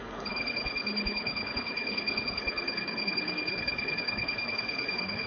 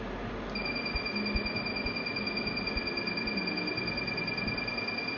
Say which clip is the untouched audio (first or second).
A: second